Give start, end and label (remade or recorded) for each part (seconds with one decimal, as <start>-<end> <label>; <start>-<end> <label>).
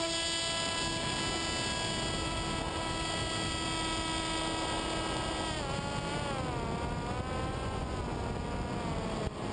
0.0-7.5 recorded; 7.5-8.0 remade; 8.0-9.5 recorded